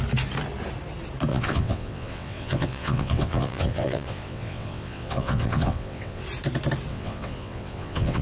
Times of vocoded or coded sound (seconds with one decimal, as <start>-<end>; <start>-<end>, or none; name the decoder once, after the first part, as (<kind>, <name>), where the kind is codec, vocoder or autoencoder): 1.3-6.2 (vocoder, WaveNeXt); 6.9-8.2